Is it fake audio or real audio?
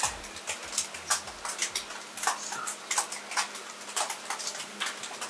real